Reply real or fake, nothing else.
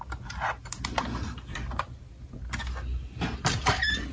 real